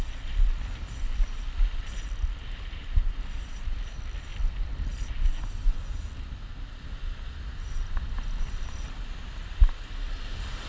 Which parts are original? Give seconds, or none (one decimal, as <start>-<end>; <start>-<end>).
4.3-8.1